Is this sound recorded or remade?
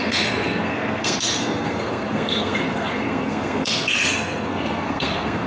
remade